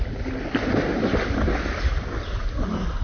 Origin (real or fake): real